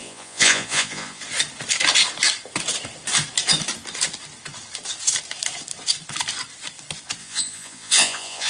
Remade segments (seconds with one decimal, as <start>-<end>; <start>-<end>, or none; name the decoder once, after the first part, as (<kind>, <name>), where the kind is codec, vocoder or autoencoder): 0.0-1.2 (vocoder, Vocos); 7.2-8.5